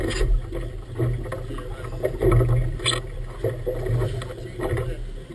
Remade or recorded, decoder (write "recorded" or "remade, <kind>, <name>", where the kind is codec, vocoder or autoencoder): recorded